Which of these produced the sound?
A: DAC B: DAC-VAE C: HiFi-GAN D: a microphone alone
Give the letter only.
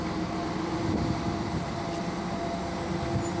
D